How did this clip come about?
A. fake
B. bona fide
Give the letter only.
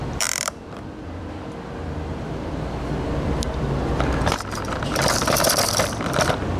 A